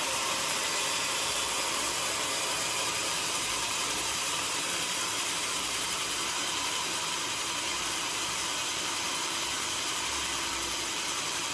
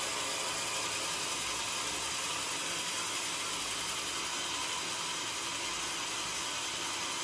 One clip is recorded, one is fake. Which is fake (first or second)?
first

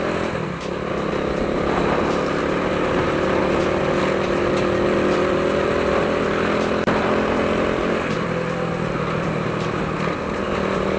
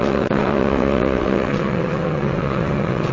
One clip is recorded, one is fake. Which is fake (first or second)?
second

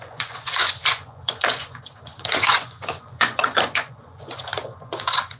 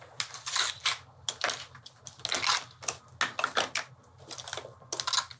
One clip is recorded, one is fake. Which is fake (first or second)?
first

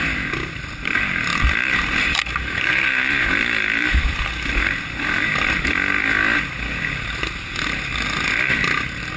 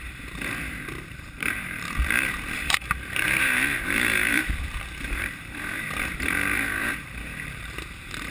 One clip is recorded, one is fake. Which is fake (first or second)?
second